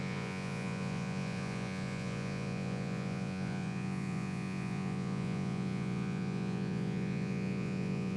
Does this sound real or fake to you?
fake